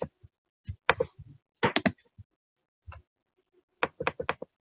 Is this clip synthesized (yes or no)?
no